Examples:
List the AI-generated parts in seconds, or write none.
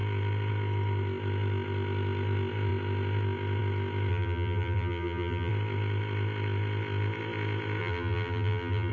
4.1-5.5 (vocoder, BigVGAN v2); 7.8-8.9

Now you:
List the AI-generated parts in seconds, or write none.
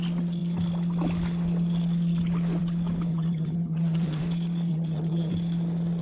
3.1-4.2 (vocoder, HiFi-GAN); 4.7-5.3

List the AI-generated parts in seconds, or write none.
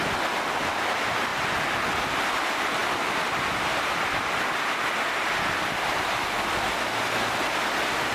none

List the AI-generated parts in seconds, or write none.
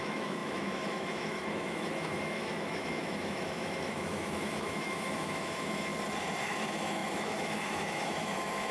0.0-5.9 (autoencoder, DAC-VAE); 6.4-8.7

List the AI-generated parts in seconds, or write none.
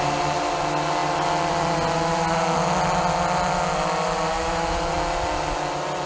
none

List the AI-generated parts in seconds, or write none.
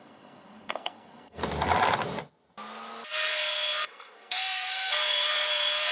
0.0-1.4 (codec, SNAC); 3.1-5.9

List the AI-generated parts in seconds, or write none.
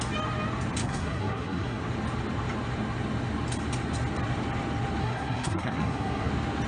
0.8-1.8 (codec, SNAC); 5.0-6.3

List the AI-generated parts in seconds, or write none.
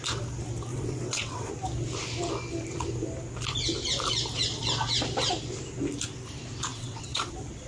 0.7-1.5 (vocoder, WaveNeXt); 6.7-7.3